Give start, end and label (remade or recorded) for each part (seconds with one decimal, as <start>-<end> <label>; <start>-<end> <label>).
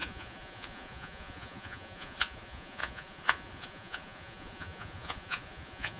0.0-6.0 remade